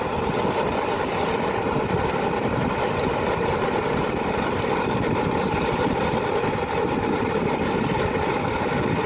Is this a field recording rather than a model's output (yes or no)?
yes